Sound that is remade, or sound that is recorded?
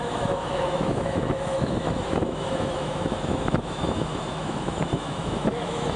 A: remade